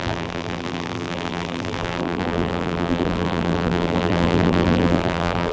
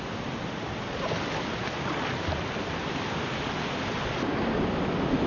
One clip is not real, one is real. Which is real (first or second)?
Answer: second